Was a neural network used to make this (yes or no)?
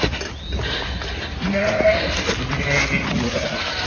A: no